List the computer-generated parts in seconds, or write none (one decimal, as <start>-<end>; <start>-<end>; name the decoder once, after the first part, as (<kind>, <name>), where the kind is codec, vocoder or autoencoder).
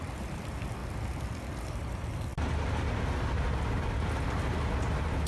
none